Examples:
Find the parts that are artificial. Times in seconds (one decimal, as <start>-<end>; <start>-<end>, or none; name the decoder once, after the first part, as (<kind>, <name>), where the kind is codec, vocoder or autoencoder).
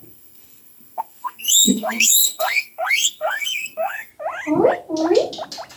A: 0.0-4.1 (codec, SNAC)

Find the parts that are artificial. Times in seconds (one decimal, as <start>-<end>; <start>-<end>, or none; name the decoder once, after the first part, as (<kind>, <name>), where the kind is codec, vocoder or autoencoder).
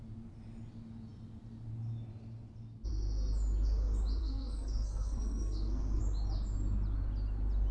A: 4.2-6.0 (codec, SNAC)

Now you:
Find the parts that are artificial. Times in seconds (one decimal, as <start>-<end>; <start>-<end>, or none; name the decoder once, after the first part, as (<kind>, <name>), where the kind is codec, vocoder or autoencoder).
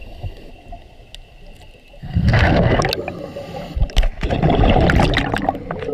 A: 0.0-0.5 (codec, SNAC); 2.0-2.8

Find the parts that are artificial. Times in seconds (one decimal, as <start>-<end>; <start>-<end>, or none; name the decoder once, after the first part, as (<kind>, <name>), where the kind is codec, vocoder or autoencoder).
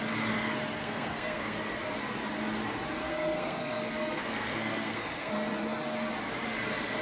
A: 0.8-1.7 (codec, SNAC); 3.0-5.3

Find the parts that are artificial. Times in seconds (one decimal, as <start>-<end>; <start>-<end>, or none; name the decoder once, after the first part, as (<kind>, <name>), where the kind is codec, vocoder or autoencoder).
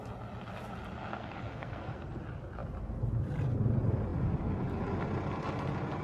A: 1.1-2.2 (codec, SNAC)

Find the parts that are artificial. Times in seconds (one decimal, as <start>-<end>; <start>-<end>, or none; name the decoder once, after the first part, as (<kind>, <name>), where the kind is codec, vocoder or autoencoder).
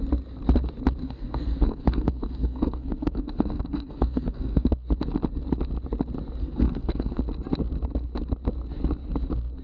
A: 1.0-4.7 (codec, SNAC); 6.4-7.2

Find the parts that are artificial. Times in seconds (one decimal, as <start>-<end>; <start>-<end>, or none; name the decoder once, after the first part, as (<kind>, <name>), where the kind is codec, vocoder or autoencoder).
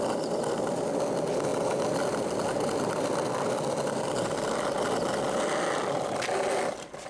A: none